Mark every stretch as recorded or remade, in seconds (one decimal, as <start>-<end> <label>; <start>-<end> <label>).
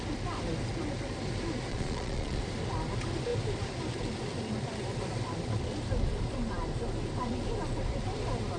0.0-1.7 recorded; 1.7-2.4 remade; 2.4-8.6 recorded